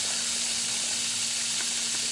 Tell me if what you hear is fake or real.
real